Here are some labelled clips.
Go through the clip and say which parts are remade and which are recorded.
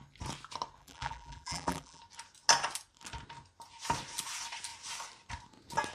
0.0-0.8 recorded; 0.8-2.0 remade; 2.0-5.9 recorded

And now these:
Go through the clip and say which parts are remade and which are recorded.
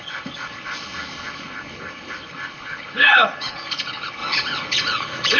0.0-5.4 remade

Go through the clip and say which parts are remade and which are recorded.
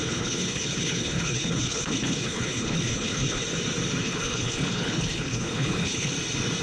0.0-3.4 remade; 3.4-4.0 recorded; 4.0-6.1 remade; 6.1-6.6 recorded